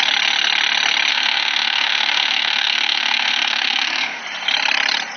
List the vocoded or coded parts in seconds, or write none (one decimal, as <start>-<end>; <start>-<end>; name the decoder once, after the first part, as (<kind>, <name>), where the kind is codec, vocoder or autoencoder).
1.1-4.2 (autoencoder, DAC-VAE)